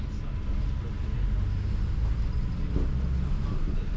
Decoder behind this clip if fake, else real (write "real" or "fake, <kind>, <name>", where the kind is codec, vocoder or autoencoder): real